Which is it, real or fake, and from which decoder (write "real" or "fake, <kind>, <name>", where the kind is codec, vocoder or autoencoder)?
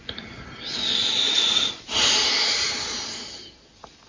real